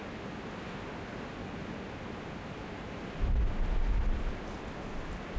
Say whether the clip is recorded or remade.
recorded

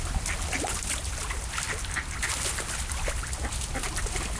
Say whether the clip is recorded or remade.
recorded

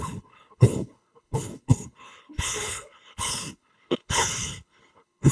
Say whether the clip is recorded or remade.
remade